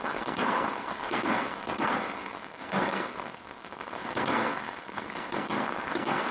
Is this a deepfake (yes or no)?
yes